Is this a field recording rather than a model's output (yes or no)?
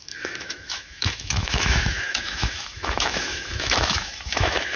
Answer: no